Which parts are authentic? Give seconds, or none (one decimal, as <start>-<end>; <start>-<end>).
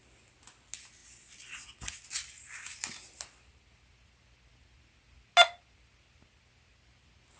0.0-7.4